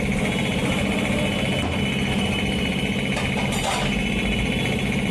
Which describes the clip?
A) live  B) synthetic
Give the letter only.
A